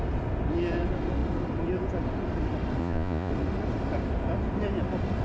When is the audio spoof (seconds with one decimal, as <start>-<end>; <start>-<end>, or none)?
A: 2.8-3.3